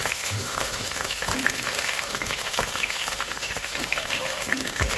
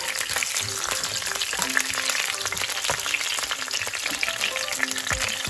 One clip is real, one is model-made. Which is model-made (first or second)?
first